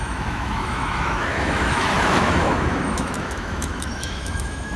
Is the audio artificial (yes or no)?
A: yes